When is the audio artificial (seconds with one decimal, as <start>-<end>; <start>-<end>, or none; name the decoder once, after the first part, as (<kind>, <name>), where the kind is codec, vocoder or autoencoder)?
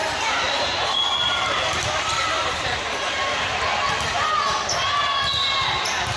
0.0-2.8 (vocoder, BigVGAN v2)